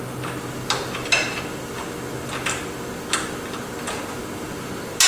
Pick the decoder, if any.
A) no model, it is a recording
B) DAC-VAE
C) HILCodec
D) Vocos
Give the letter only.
A